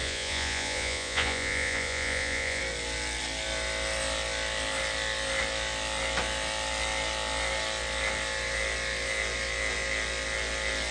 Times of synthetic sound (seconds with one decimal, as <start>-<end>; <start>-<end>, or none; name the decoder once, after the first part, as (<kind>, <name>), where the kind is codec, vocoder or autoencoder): 0.0-2.6 (vocoder, Vocos)